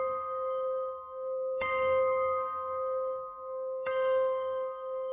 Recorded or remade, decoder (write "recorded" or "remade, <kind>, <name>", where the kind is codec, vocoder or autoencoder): remade, codec, SNAC